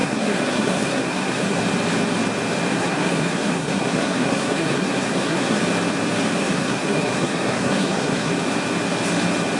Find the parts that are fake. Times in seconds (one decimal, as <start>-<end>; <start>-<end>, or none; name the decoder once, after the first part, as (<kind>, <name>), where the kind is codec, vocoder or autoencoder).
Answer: 0.0-1.6 (codec, SNAC); 2.7-5.6; 6.4-8.3